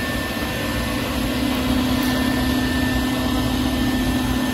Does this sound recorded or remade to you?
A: recorded